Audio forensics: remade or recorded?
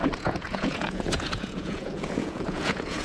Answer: remade